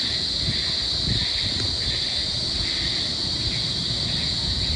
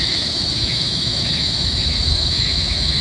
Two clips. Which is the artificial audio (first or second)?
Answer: second